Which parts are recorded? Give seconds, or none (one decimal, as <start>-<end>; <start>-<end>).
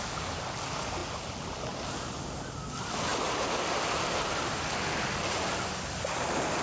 0.0-6.6